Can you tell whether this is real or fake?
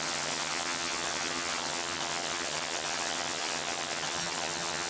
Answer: fake